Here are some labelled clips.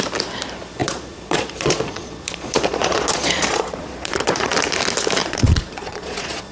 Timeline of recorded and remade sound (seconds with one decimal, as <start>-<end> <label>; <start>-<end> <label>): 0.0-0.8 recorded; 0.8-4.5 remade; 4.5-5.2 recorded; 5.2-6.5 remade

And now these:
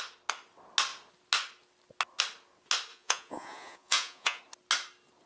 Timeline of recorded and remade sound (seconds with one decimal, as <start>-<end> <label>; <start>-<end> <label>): 0.0-2.9 recorded; 2.9-4.4 remade; 4.4-5.3 recorded

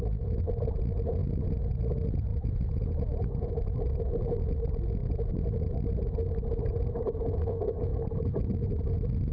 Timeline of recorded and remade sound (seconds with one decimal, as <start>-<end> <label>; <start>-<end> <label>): 0.0-1.2 recorded; 1.2-1.9 remade; 1.9-2.3 recorded; 2.3-3.5 remade; 3.5-9.3 recorded

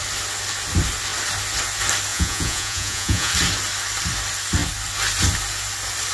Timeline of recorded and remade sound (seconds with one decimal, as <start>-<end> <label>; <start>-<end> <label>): 0.0-2.1 recorded; 2.1-3.3 remade; 3.3-6.1 recorded

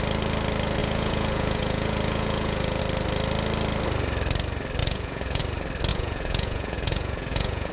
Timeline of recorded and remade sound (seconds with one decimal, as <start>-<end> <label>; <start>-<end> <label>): 0.0-0.8 recorded; 0.8-2.8 remade; 2.8-4.8 recorded; 4.8-5.4 remade; 5.4-5.9 recorded; 5.9-7.7 remade

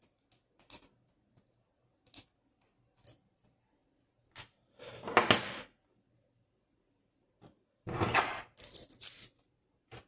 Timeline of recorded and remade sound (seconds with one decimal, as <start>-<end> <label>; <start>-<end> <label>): 0.0-10.1 recorded

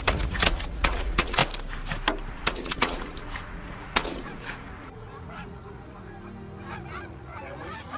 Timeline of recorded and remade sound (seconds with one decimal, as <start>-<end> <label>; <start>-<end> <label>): 0.0-1.4 remade; 1.4-2.3 recorded; 2.3-6.1 remade; 6.1-6.7 recorded; 6.7-8.0 remade